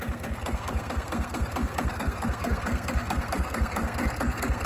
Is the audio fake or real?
fake